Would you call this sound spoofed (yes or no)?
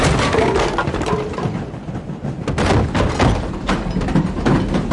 no